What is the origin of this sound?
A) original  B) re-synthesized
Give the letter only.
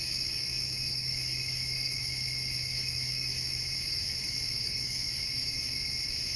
B